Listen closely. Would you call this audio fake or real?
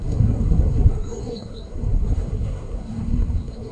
fake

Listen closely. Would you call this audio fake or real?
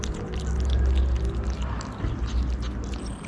real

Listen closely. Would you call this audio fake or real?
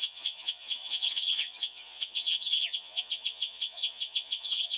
fake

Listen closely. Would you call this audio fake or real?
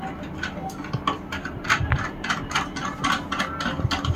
real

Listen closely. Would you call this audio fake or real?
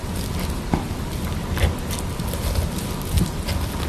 real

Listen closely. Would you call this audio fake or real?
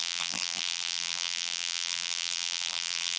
fake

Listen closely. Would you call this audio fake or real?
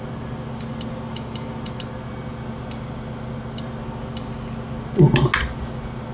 real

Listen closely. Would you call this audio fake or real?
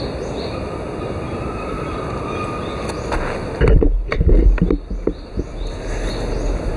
real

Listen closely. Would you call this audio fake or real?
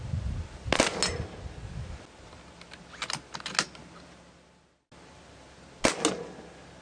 real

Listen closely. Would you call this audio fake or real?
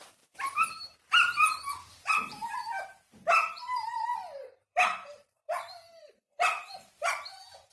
fake